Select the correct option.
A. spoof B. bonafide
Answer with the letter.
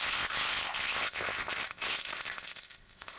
A